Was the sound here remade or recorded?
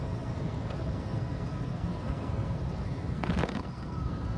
remade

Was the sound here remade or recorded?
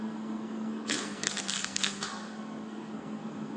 remade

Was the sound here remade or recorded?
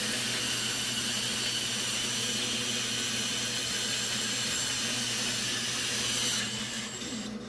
recorded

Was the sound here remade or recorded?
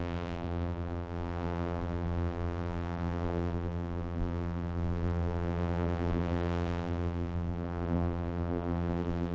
remade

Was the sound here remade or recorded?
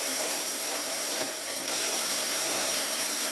remade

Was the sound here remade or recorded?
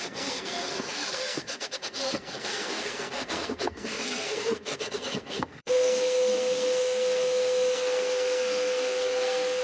remade